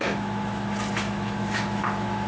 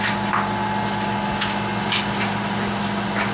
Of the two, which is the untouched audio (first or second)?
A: second